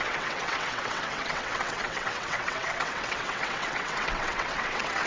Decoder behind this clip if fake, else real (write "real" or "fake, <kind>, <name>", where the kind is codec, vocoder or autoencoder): fake, vocoder, WaveNeXt